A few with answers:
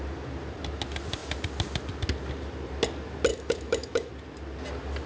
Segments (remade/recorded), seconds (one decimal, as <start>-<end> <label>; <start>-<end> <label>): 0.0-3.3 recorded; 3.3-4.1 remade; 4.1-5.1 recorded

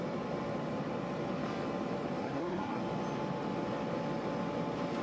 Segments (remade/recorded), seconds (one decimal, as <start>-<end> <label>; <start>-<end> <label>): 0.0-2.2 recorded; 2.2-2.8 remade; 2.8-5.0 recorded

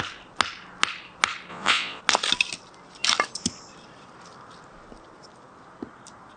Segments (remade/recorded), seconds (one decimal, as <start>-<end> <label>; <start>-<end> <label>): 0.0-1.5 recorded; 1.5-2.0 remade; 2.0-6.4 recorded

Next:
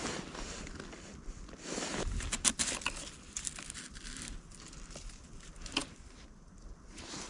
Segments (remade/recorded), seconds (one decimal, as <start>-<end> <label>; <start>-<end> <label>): 0.0-7.3 recorded

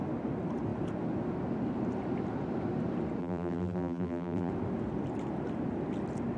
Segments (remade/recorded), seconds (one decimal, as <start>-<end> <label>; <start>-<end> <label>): 0.0-3.2 recorded; 3.2-4.5 remade; 4.5-6.4 recorded